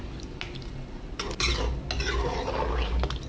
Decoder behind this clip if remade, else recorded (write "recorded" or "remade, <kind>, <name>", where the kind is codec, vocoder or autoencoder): recorded